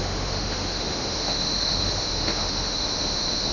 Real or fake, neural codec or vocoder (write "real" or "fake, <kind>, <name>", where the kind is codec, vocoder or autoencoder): fake, autoencoder, DAC-VAE